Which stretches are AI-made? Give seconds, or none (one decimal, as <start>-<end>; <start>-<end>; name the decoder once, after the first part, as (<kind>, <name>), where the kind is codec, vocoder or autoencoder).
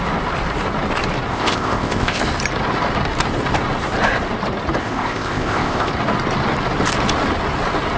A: 1.3-2.2 (codec, ZipCodec); 4.8-5.9